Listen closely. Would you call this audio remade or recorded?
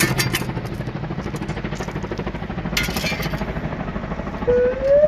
recorded